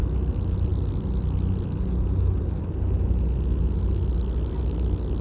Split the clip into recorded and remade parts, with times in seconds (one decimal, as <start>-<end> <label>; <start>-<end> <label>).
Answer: 0.0-5.2 recorded